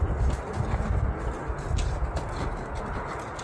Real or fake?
real